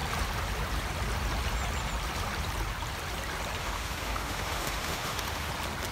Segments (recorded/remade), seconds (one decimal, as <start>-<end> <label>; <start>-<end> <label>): 0.0-3.6 recorded; 3.6-5.5 remade; 5.5-5.9 recorded